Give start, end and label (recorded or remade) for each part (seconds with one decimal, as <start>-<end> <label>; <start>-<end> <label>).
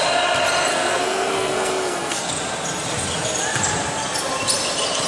0.0-0.7 recorded; 0.7-2.3 remade; 2.3-5.1 recorded